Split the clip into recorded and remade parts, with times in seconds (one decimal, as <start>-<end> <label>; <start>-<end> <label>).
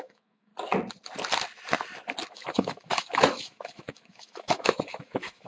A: 0.0-0.5 remade; 0.5-2.3 recorded; 2.3-5.5 remade